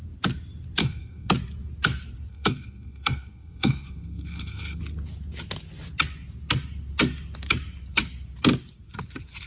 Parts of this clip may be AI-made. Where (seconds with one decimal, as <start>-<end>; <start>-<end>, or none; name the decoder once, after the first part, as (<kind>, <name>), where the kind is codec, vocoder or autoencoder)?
0.8-1.3 (codec, SNAC); 2.3-4.8